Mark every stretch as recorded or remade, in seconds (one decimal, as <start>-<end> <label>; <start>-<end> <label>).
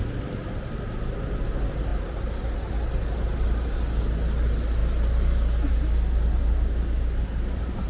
0.0-7.9 recorded